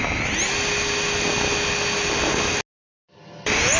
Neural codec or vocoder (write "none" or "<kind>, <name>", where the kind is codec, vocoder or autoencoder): none